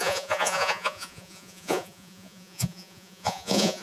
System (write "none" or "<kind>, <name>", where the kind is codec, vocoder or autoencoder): vocoder, Vocos